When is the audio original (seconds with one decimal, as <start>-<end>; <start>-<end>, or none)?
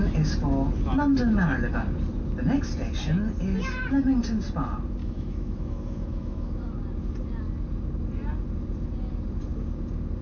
0.0-5.0; 6.5-10.2